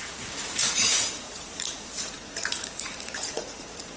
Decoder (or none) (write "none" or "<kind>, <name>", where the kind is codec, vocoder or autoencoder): vocoder, Vocos